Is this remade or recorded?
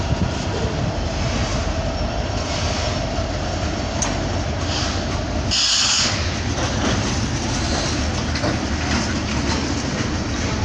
recorded